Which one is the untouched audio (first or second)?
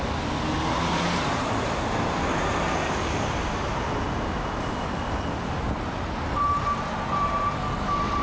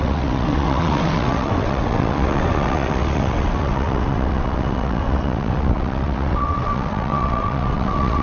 first